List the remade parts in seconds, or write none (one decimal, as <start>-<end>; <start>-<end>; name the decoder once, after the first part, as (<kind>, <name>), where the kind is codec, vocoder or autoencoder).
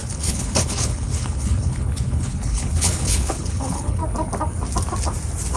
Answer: 0.0-4.0 (codec, HILCodec)